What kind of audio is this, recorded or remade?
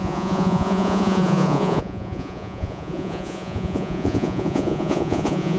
remade